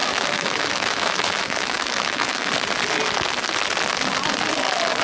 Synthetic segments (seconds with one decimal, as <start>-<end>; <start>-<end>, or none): 0.0-2.5